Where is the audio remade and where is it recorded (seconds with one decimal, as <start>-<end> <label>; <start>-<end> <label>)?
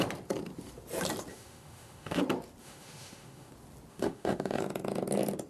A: 0.0-1.3 recorded; 1.3-2.2 remade; 2.2-2.6 recorded; 2.6-3.5 remade; 3.5-3.9 recorded; 3.9-4.6 remade; 4.6-5.5 recorded